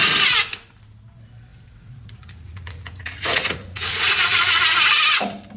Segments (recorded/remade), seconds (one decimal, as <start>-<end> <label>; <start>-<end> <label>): 0.0-1.5 recorded; 1.5-4.6 remade; 4.6-5.6 recorded